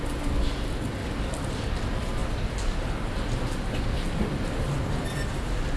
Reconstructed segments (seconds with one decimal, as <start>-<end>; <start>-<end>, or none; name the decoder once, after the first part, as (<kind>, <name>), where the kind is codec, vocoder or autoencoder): none